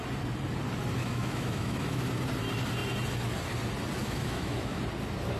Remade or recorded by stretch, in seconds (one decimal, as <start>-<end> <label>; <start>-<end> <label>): 0.0-1.0 recorded; 1.0-2.0 remade; 2.0-4.0 recorded; 4.0-4.8 remade; 4.8-5.4 recorded